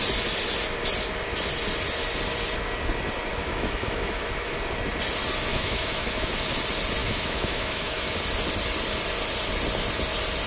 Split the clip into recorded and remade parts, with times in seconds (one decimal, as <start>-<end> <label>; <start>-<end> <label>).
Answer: 0.0-3.4 recorded; 3.4-4.6 remade; 4.6-5.5 recorded; 5.5-6.3 remade; 6.3-7.0 recorded; 7.0-8.1 remade; 8.1-10.5 recorded